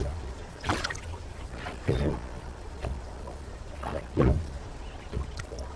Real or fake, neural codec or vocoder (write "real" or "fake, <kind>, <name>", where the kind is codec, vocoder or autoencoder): fake, vocoder, Vocos